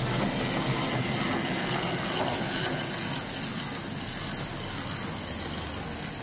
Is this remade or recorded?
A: recorded